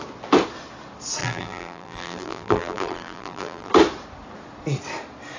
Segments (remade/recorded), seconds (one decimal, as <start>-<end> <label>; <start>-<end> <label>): 0.0-1.2 recorded; 1.2-3.7 remade; 3.7-5.4 recorded